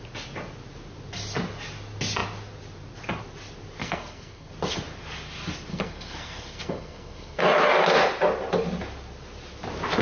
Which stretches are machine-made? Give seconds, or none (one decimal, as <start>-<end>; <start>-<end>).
3.8-4.5; 5.7-7.4